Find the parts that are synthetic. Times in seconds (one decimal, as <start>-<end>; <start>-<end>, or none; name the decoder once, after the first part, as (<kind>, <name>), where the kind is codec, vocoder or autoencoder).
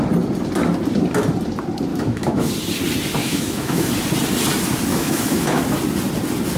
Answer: 1.9-2.5 (autoencoder, DAC-VAE); 3.2-3.9; 4.9-5.6